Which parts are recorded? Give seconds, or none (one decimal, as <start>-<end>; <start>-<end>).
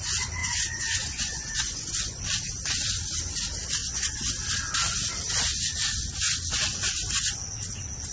0.0-0.4; 2.2-3.8; 4.3-8.1